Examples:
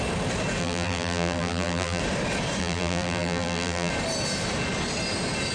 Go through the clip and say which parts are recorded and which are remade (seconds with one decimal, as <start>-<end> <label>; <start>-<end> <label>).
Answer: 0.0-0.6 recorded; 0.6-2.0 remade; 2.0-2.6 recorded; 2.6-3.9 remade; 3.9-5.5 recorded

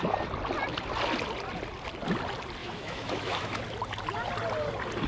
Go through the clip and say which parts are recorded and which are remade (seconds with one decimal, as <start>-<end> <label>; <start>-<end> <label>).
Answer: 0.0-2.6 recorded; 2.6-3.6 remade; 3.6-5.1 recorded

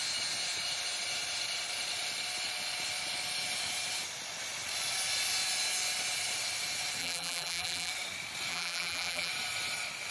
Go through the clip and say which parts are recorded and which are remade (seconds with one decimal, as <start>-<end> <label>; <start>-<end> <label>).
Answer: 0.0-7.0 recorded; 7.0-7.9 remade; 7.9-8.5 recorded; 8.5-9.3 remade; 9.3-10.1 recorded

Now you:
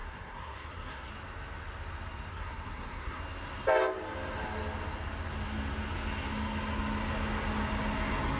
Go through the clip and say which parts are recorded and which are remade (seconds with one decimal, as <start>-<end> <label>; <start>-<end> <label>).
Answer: 0.0-1.1 remade; 1.1-2.3 recorded; 2.3-3.2 remade; 3.2-8.4 recorded

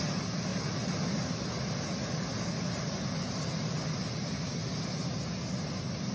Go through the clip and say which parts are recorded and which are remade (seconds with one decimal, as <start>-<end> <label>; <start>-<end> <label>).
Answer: 0.0-6.1 recorded

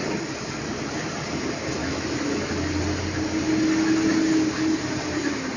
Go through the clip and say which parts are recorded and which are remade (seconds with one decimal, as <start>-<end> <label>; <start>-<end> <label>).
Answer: 0.0-1.8 recorded; 1.8-2.5 remade; 2.5-5.6 recorded